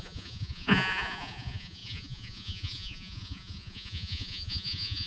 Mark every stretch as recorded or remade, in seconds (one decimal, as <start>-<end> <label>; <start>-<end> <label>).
0.0-5.1 remade